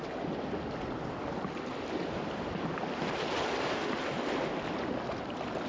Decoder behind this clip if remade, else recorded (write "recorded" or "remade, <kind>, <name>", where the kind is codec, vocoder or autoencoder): recorded